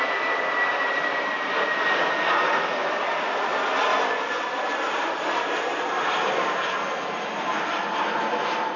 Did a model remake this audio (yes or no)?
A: no